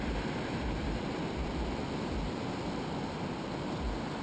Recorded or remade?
remade